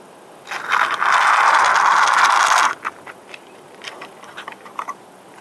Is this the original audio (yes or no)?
yes